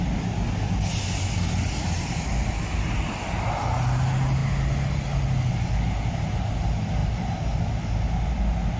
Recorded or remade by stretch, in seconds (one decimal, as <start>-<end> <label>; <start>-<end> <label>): 0.0-8.8 recorded